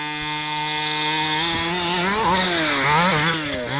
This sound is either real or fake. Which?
real